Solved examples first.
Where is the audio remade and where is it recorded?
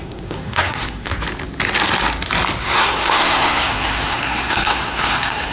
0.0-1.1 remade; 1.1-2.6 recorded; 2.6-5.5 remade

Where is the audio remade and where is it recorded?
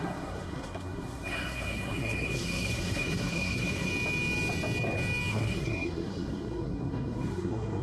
0.0-3.9 remade; 3.9-5.3 recorded; 5.3-7.8 remade